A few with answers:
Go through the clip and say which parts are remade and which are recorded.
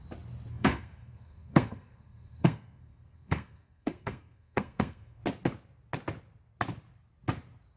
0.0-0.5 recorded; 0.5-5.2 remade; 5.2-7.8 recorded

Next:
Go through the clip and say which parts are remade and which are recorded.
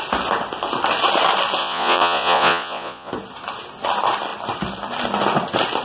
0.0-1.6 recorded; 1.6-3.1 remade; 3.1-5.8 recorded